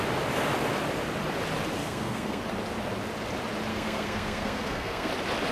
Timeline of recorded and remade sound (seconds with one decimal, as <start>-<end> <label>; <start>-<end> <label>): 0.0-1.8 recorded; 1.8-2.4 remade; 2.4-3.7 recorded; 3.7-5.1 remade; 5.1-5.5 recorded